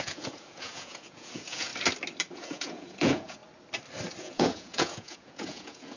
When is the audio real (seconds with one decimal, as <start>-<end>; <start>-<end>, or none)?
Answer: 1.7-2.3; 3.4-4.2